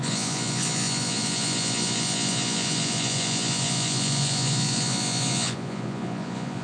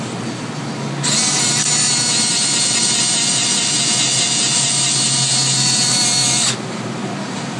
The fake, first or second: first